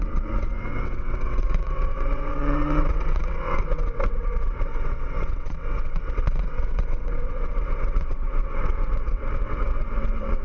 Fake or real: fake